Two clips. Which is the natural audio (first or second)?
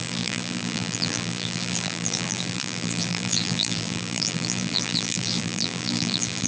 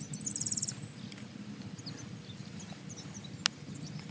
second